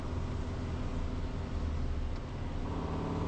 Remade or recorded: recorded